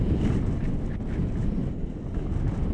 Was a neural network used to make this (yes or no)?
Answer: no